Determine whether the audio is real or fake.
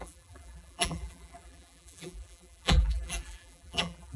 fake